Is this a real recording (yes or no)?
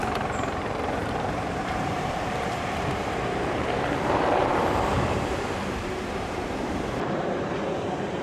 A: no